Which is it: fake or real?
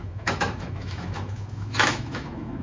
fake